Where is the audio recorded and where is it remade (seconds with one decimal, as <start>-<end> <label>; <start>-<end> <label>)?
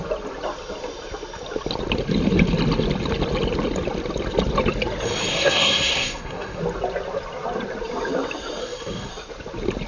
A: 0.0-5.3 recorded; 5.3-6.6 remade; 6.6-8.6 recorded; 8.6-9.1 remade; 9.1-9.9 recorded